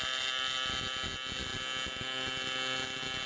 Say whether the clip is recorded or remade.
recorded